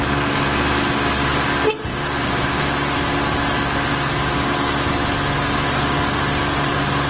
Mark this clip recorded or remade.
recorded